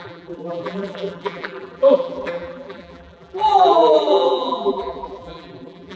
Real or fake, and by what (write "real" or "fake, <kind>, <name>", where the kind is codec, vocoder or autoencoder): fake, vocoder, BigVGAN v2